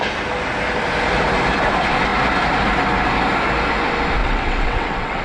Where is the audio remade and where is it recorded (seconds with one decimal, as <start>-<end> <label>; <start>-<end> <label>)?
0.0-4.2 recorded; 4.2-5.2 remade